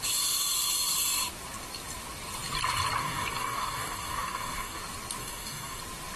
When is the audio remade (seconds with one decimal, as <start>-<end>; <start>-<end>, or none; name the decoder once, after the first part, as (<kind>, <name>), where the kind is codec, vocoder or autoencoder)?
3.0-4.8 (codec, DAC); 5.2-5.8